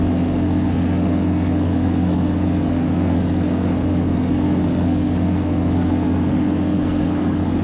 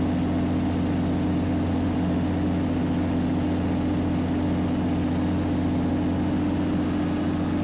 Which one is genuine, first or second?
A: second